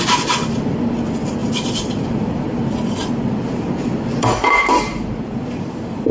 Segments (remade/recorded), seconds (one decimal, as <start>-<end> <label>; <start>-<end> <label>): 0.0-6.1 recorded